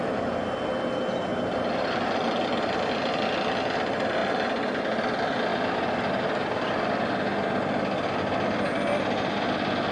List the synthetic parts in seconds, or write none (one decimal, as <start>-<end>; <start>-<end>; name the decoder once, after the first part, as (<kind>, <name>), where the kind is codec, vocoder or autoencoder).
1.3-2.9 (vocoder, BigVGAN v2); 4.2-4.8